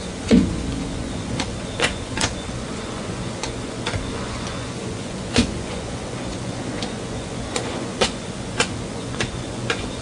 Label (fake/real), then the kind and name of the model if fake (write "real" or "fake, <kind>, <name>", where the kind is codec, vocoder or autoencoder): fake, vocoder, Vocos